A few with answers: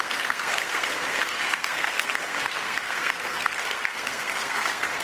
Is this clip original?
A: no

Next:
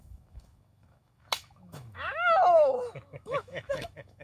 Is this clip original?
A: no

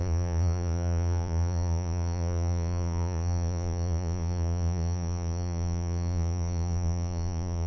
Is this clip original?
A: no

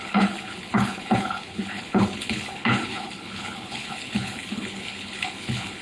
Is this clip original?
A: no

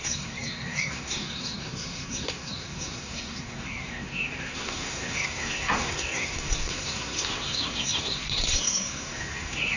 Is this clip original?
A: no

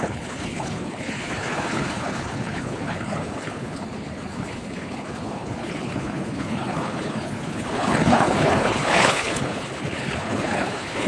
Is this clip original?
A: no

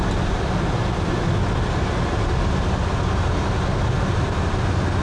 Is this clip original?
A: yes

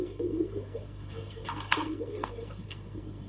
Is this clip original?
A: no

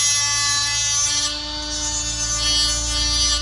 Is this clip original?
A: yes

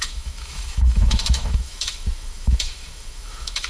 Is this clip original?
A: no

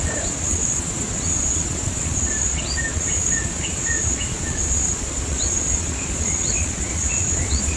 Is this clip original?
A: no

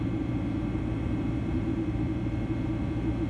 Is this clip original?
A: no